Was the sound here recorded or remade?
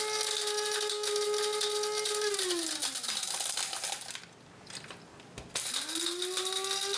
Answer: recorded